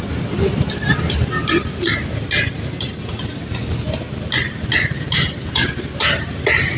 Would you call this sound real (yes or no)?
yes